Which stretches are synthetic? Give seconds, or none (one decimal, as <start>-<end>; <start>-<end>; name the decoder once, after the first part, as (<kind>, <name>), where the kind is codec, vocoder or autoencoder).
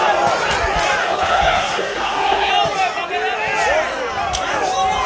1.0-2.5 (codec, SNAC)